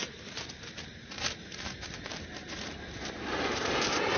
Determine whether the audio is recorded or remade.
remade